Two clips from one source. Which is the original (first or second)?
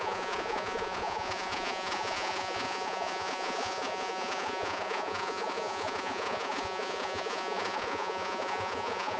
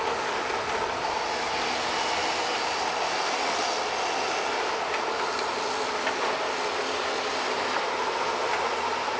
second